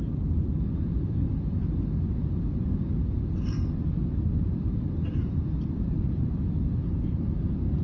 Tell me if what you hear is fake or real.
real